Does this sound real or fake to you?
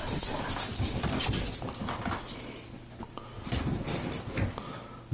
real